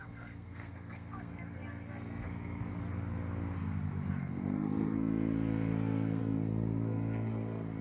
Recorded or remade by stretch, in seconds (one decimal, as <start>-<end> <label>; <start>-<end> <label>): 0.0-2.7 remade; 2.7-4.1 recorded; 4.1-7.8 remade